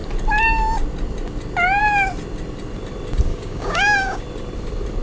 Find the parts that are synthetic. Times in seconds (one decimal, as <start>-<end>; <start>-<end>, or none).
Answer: 3.3-4.2